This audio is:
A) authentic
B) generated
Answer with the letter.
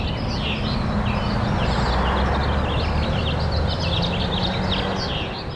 A